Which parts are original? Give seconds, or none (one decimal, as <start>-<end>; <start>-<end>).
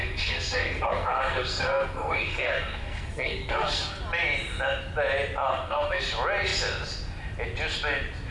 4.0-5.5; 6.0-8.3